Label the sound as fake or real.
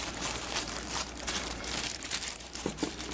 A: fake